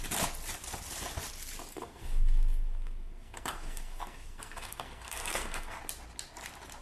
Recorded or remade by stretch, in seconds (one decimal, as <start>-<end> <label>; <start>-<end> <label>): 0.0-1.7 recorded; 1.7-5.8 remade; 5.8-6.8 recorded